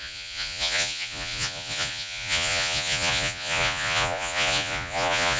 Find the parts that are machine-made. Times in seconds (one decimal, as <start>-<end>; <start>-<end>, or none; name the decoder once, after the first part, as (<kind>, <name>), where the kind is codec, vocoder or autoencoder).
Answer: 0.0-5.4 (vocoder, Vocos)